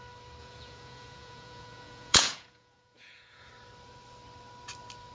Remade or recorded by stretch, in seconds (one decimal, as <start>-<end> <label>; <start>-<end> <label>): 0.0-0.4 recorded; 0.4-3.5 remade; 3.5-5.1 recorded

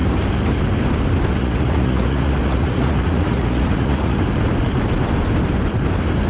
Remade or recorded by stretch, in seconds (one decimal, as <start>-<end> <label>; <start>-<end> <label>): 0.0-1.3 recorded; 1.3-4.2 remade; 4.2-6.3 recorded